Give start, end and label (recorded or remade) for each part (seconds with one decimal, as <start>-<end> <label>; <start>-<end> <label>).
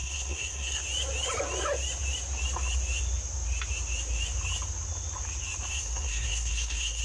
0.0-0.8 remade; 0.8-5.7 recorded; 5.7-7.0 remade